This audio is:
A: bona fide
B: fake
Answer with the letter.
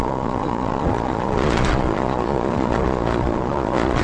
B